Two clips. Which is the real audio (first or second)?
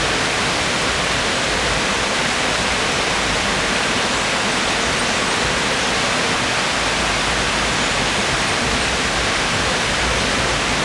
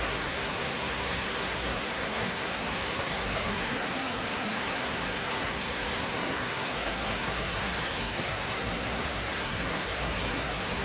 first